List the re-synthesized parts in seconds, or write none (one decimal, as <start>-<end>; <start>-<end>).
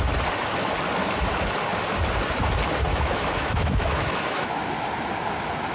2.9-4.6